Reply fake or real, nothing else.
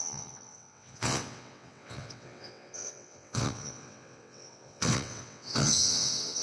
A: fake